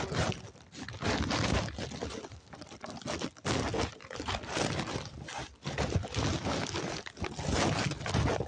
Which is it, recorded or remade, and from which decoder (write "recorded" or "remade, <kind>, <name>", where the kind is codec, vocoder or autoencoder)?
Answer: recorded